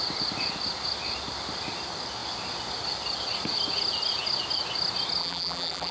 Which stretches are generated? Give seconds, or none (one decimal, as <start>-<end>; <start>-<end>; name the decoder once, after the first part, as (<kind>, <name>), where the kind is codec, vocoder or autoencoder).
5.2-5.9 (vocoder, BigVGAN v2)